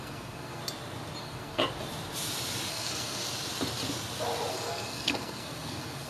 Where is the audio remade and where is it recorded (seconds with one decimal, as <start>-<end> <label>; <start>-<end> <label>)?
0.0-0.6 remade; 0.6-1.2 recorded; 1.2-1.6 remade; 1.6-2.7 recorded; 2.7-3.2 remade; 3.2-4.5 recorded; 4.5-6.1 remade